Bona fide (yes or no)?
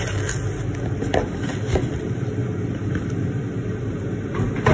yes